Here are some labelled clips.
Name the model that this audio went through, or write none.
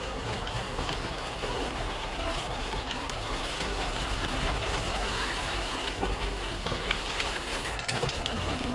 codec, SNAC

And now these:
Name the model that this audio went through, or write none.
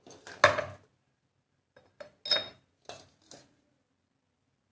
none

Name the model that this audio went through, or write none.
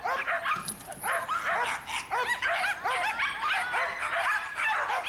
none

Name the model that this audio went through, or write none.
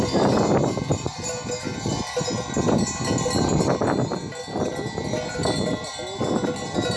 none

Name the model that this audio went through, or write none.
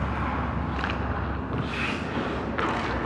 none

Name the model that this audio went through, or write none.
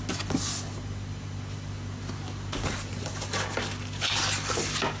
none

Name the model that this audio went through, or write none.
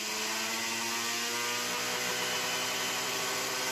none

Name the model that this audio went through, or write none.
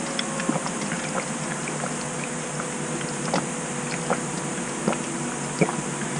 none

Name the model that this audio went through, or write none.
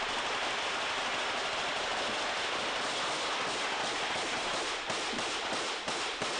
none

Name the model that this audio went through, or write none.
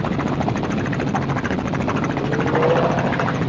none